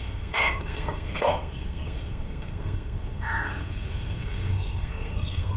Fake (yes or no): yes